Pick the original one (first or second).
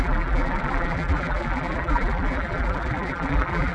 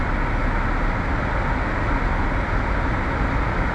second